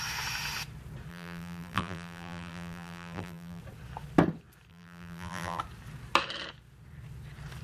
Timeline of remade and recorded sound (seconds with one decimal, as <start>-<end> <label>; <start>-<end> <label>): 0.0-1.1 recorded; 1.1-3.6 remade; 3.6-4.7 recorded; 4.7-5.6 remade; 5.6-7.6 recorded